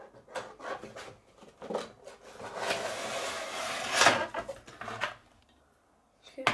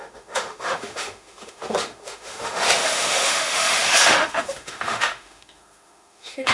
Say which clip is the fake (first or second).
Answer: second